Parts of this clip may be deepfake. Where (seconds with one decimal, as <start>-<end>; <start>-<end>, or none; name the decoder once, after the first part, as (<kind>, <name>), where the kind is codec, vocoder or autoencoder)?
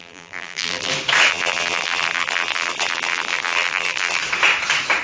0.0-0.9 (vocoder, BigVGAN v2); 1.3-4.2